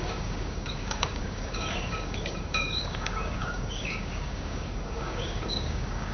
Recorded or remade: remade